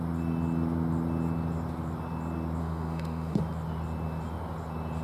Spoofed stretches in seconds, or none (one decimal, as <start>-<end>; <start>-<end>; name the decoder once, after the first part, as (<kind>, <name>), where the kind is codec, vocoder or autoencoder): 2.6-3.4 (autoencoder, DAC-VAE)